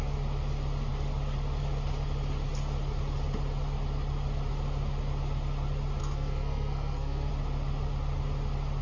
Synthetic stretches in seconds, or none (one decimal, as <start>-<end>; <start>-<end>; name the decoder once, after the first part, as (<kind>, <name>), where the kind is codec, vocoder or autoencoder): 6.0-7.3 (codec, SNAC)